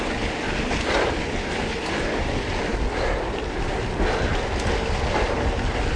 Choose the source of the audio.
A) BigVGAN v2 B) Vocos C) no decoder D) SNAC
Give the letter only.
C